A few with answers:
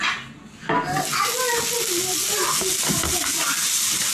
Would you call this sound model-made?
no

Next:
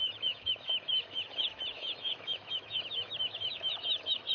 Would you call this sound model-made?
yes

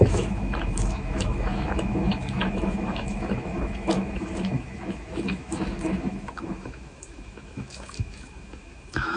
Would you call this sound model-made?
yes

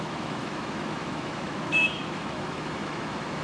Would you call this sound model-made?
yes